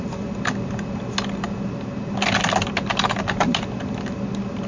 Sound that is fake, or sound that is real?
real